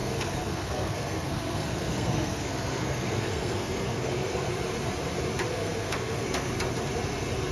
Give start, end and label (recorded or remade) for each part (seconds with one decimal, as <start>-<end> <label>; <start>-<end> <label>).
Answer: 0.0-4.5 remade; 4.5-5.5 recorded; 5.5-6.5 remade; 6.5-7.5 recorded